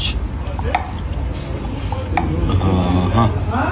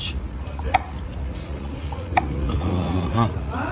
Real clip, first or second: first